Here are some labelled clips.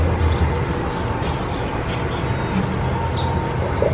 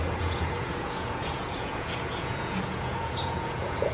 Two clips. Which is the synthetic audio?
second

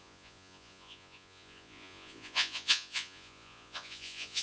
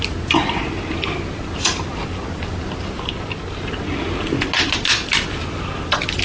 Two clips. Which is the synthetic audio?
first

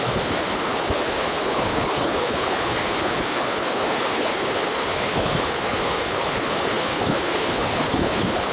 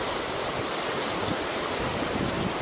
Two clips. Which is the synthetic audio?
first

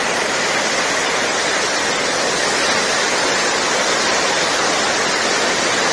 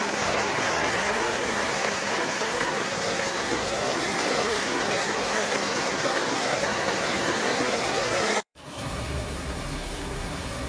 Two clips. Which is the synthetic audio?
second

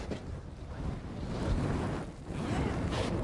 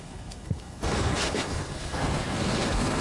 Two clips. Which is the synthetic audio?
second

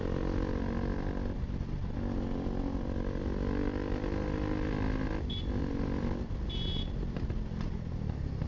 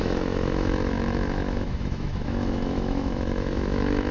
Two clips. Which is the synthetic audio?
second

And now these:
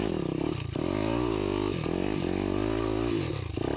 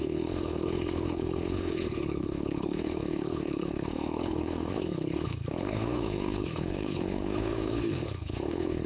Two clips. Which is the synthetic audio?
second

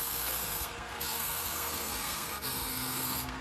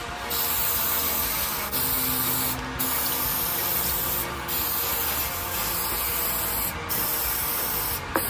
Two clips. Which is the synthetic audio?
first